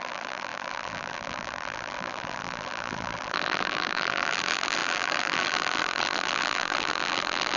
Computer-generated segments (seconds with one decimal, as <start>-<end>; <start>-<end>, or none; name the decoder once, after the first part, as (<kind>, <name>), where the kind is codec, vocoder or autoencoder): 0.0-7.6 (vocoder, BigVGAN v2)